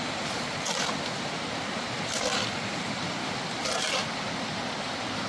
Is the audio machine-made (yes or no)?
no